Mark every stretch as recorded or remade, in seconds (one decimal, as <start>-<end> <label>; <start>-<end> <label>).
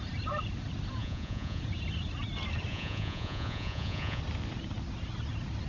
0.0-1.0 recorded; 1.0-1.6 remade; 1.6-2.7 recorded; 2.7-4.2 remade; 4.2-5.7 recorded